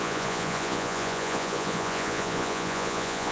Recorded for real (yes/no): no